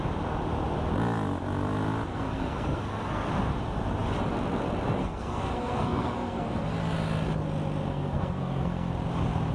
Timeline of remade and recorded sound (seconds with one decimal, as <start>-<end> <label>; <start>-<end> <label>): 0.0-2.1 recorded; 2.1-3.3 remade; 3.3-5.0 recorded; 5.0-6.7 remade; 6.7-7.9 recorded; 7.9-8.9 remade; 8.9-9.5 recorded

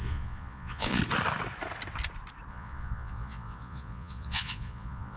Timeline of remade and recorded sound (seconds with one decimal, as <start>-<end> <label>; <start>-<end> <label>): 0.0-1.0 remade; 1.0-2.5 recorded; 2.5-5.2 remade

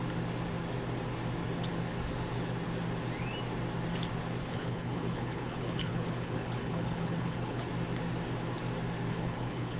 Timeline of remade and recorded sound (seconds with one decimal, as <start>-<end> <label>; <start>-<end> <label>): 0.0-4.4 recorded; 4.4-7.7 remade; 7.7-9.1 recorded; 9.1-9.8 remade